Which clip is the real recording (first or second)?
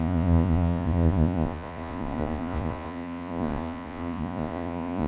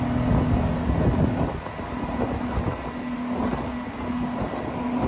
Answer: second